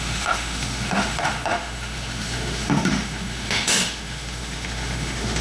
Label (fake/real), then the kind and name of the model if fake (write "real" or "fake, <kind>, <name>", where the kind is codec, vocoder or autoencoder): fake, autoencoder, DAC-VAE